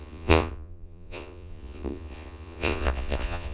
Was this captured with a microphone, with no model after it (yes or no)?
no